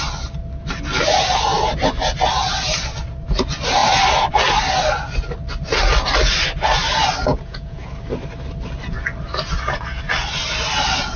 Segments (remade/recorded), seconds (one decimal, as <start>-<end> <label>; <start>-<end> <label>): 0.0-7.3 recorded; 7.3-7.9 remade; 7.9-11.2 recorded